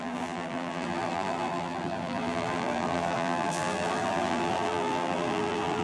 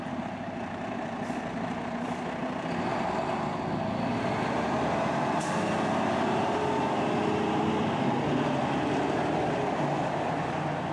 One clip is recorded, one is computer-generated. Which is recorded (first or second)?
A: second